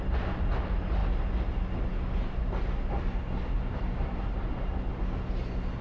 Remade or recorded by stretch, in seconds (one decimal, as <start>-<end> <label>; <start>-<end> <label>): 0.0-5.8 recorded